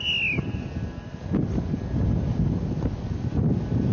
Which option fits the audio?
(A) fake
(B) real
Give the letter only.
B